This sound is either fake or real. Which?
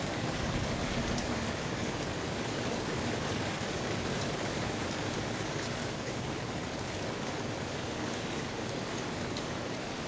fake